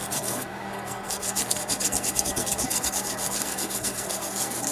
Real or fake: fake